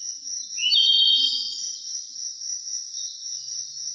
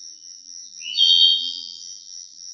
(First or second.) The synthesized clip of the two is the second